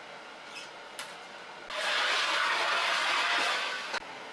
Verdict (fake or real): real